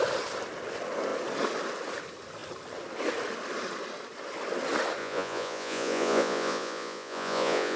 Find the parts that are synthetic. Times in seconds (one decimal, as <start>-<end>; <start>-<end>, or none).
5.0-7.8